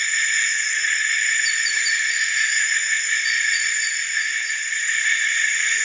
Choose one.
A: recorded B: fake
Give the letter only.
A